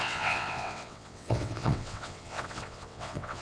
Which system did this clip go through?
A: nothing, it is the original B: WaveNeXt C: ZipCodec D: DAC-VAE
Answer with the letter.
B